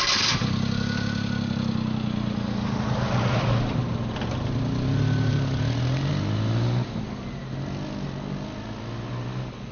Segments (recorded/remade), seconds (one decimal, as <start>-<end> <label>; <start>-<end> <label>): 0.0-9.7 recorded